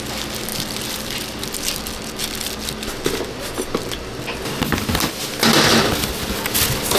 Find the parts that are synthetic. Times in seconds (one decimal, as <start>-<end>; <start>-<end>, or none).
0.5-2.1